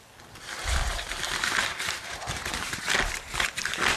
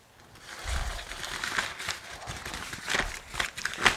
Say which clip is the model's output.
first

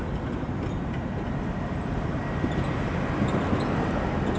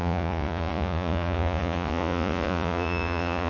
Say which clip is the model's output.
second